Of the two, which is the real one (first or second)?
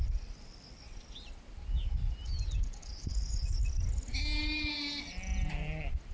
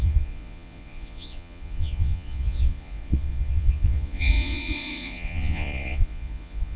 first